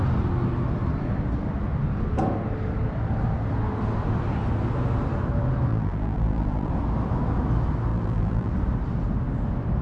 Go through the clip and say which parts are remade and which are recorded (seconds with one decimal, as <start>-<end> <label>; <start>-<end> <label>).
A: 0.0-5.7 recorded; 5.7-6.7 remade; 6.7-7.9 recorded; 7.9-8.5 remade; 8.5-9.8 recorded

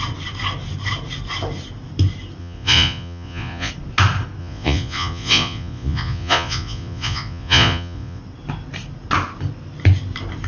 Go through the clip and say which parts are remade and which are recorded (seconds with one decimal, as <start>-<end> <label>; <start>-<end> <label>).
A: 0.0-2.4 recorded; 2.4-3.7 remade; 3.7-4.4 recorded; 4.4-8.2 remade; 8.2-10.5 recorded